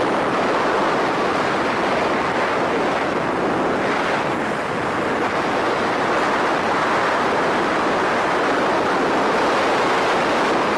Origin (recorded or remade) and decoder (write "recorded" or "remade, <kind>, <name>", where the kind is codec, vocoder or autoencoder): recorded